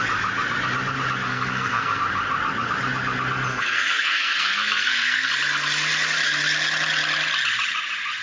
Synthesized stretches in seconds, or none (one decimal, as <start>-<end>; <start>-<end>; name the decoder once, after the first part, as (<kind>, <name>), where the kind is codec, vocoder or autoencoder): 1.3-2.0 (codec, SNAC); 3.5-5.3